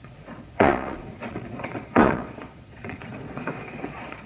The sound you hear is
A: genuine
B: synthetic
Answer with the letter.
B